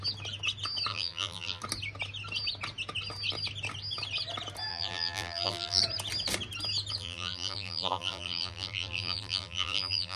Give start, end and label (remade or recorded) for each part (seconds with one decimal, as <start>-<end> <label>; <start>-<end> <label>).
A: 0.0-0.9 recorded; 0.9-1.6 remade; 1.6-4.7 recorded; 4.7-5.8 remade; 5.8-7.0 recorded; 7.0-10.2 remade